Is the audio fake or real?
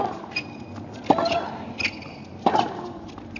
real